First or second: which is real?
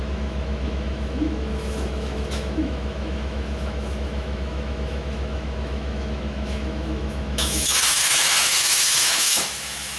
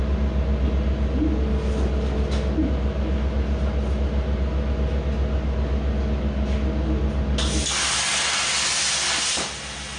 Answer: second